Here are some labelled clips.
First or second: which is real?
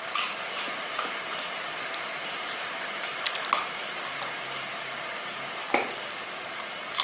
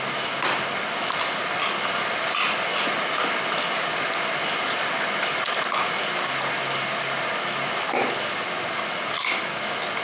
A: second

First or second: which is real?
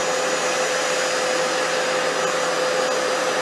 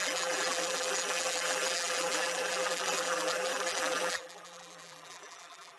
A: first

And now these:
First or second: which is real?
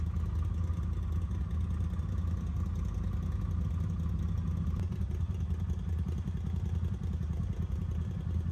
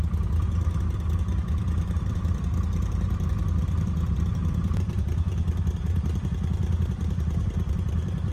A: first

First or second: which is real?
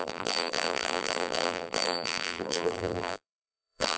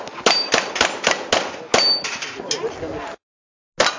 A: second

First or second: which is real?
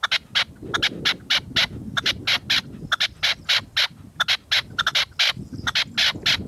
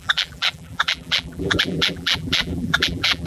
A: first